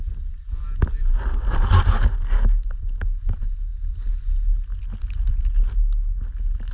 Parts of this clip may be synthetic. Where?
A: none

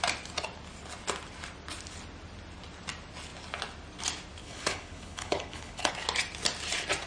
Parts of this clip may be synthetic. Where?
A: 4.4-5.9 (codec, HILCodec)

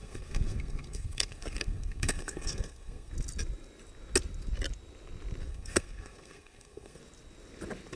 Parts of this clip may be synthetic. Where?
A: 0.0-3.1 (codec, SNAC); 5.5-7.0

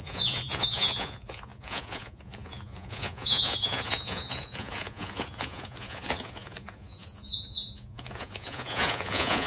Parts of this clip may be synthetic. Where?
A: 0.0-9.5 (vocoder, Vocos)

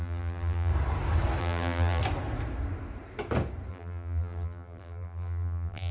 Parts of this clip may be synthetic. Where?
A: 0.0-0.7 (vocoder, BigVGAN v2); 1.4-2.0; 3.7-5.9